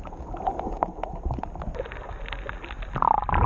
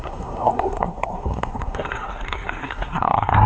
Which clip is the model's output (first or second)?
second